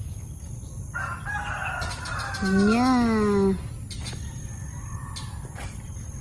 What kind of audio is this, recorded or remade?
recorded